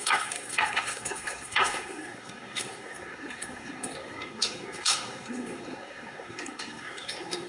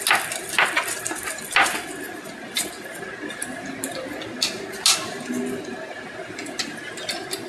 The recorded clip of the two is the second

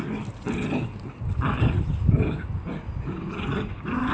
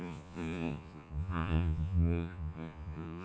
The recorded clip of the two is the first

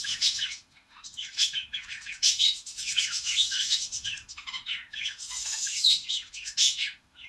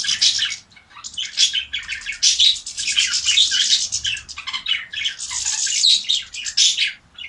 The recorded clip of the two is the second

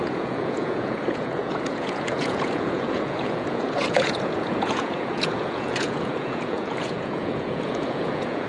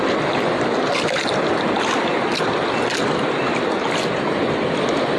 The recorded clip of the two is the second